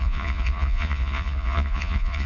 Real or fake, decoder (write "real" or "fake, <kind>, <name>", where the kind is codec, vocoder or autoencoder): fake, vocoder, Vocos